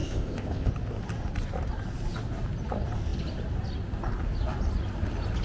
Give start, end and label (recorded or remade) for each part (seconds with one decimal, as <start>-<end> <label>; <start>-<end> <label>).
0.0-0.7 remade; 0.7-5.4 recorded